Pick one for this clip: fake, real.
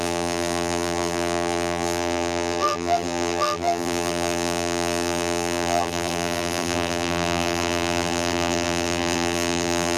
fake